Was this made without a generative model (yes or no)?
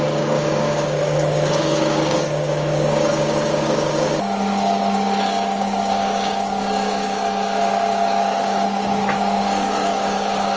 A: no